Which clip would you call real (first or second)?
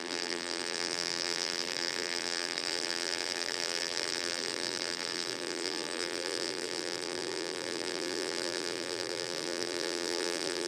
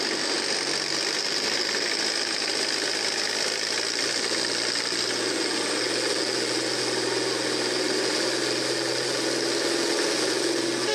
second